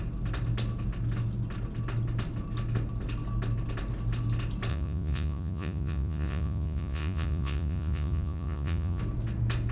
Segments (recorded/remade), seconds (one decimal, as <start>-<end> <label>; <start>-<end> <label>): 0.0-4.7 recorded; 4.7-9.0 remade; 9.0-9.7 recorded